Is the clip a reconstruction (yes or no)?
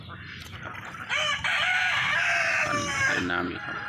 no